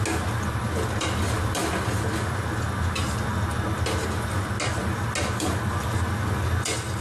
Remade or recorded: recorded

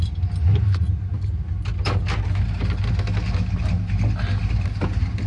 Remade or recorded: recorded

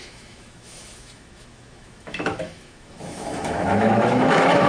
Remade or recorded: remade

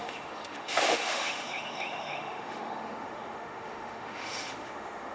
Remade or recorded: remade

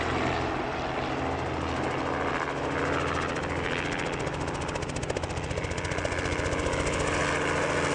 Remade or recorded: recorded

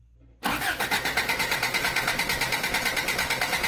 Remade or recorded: recorded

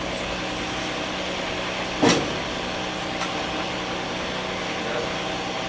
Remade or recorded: recorded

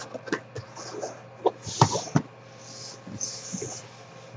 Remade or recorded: recorded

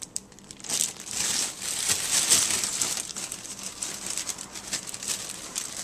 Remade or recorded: recorded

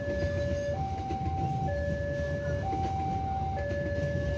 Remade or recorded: recorded